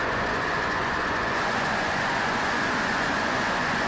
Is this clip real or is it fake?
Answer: fake